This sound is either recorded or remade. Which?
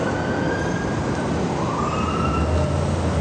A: recorded